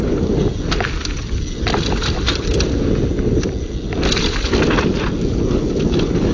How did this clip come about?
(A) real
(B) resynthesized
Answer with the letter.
A